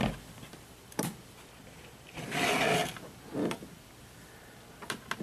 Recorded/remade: recorded